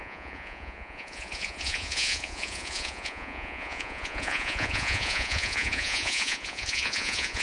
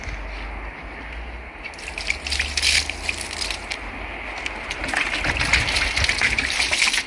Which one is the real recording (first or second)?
second